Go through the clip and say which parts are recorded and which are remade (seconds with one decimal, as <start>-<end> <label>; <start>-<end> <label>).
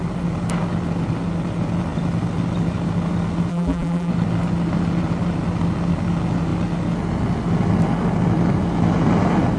0.0-3.5 recorded; 3.5-4.1 remade; 4.1-9.6 recorded